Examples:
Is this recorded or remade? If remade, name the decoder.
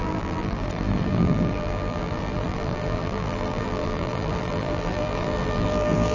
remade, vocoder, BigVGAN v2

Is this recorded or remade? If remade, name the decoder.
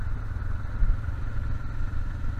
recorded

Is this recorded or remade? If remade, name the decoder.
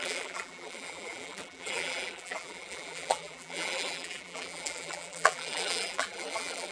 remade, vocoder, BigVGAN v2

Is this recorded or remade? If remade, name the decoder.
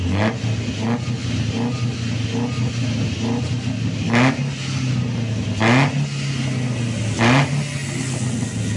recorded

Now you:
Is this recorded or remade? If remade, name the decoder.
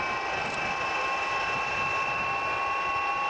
recorded